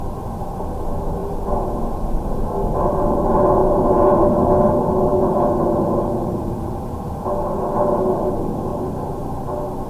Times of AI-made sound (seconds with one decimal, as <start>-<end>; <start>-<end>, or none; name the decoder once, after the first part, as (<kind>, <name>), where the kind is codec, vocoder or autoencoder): 1.2-2.4 (vocoder, Vocos); 3.6-4.3; 5.1-7.6